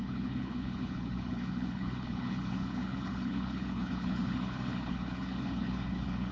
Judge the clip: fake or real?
fake